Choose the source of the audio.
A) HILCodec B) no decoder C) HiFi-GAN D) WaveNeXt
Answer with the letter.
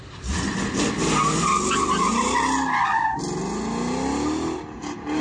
B